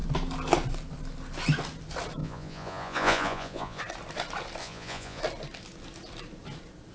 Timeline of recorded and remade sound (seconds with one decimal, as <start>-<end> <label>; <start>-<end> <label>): 0.0-2.2 recorded; 2.2-3.8 remade; 3.8-4.6 recorded; 4.6-5.2 remade; 5.2-6.9 recorded